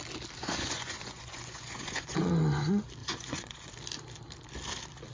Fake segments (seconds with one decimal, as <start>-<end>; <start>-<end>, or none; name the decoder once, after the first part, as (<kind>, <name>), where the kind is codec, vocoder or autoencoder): 0.4-2.4 (vocoder, Vocos); 3.0-3.7